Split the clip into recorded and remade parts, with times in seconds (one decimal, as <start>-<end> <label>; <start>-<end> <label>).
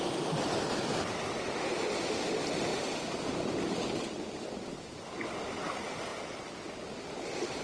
0.0-7.6 recorded